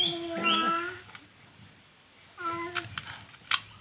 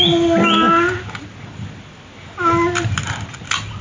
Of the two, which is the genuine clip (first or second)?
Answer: second